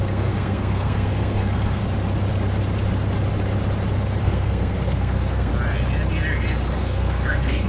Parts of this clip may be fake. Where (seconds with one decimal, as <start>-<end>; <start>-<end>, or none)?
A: 0.0-1.8; 4.2-5.5; 6.8-7.7